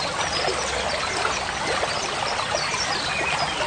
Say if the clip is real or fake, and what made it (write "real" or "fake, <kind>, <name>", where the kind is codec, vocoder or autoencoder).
real